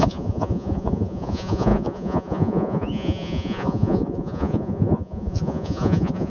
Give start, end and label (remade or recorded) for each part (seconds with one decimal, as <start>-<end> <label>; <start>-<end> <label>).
0.0-6.3 remade